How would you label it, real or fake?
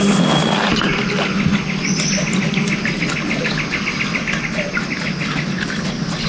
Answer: real